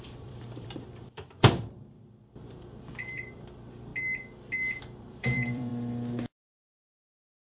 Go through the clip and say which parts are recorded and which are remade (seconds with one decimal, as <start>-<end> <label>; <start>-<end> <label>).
0.0-3.9 remade; 3.9-4.8 recorded; 4.8-5.7 remade; 5.7-6.7 recorded; 6.7-7.4 remade